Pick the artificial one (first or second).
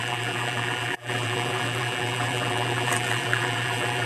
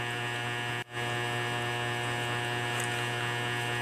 first